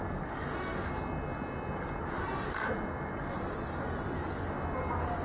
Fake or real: real